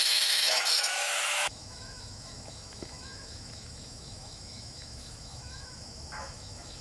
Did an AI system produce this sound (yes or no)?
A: yes